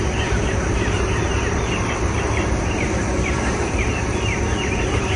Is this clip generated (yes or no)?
yes